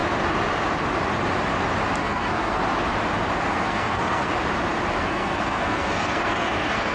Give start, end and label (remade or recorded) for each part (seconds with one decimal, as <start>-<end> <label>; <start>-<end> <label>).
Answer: 0.0-2.0 recorded; 2.0-2.6 remade; 2.6-3.5 recorded; 3.5-4.3 remade; 4.3-5.0 recorded; 5.0-6.9 remade